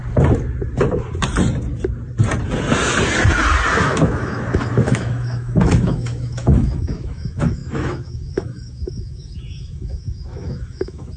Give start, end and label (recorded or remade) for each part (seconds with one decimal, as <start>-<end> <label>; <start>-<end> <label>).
0.0-3.8 recorded; 3.8-11.2 remade